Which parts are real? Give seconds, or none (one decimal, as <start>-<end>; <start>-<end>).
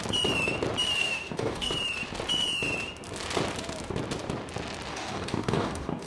0.0-1.0; 1.7-4.9